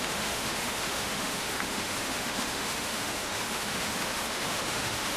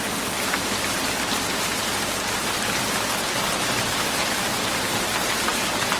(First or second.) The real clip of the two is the second